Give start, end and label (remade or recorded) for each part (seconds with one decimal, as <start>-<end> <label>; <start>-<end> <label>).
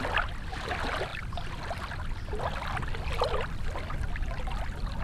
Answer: 0.0-5.0 recorded